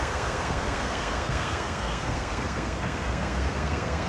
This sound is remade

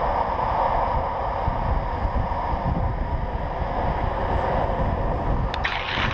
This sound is recorded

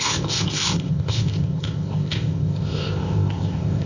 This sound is remade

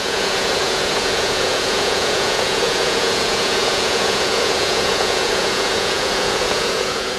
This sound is remade